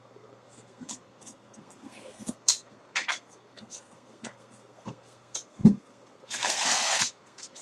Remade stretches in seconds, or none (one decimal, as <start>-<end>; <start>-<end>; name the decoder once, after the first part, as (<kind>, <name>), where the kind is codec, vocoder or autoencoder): 0.0-7.6 (codec, SNAC)

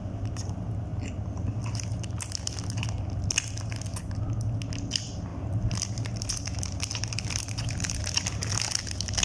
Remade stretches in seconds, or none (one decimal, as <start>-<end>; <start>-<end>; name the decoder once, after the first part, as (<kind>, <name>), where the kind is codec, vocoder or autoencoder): 5.3-7.4 (vocoder, BigVGAN v2)

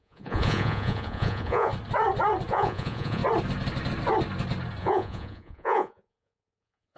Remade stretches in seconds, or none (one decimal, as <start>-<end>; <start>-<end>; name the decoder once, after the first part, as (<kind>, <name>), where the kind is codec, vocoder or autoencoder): 0.0-1.7 (vocoder, Vocos); 2.5-3.2; 4.8-7.0

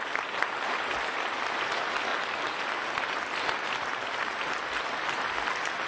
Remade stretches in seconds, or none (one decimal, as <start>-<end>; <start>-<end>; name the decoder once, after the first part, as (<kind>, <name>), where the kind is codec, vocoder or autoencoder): none

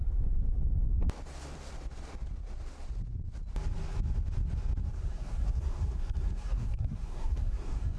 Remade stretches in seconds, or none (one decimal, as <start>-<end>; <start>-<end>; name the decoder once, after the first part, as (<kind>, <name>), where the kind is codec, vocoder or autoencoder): 4.8-8.0 (codec, SNAC)

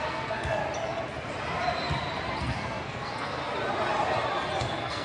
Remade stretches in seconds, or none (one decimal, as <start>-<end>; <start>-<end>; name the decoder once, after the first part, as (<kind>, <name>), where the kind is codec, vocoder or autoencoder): 0.0-0.6 (codec, SNAC); 2.4-3.4; 4.6-5.0